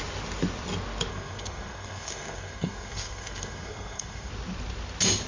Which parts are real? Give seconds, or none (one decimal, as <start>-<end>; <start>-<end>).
0.0-1.1; 4.3-5.3